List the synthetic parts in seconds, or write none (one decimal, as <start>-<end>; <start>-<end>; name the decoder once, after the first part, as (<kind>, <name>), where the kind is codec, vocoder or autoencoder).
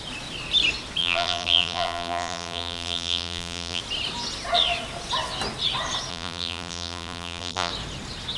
1.0-3.8 (vocoder, BigVGAN v2); 6.1-7.7